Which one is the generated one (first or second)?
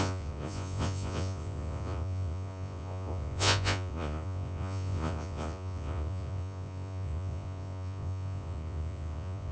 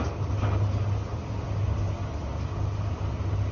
first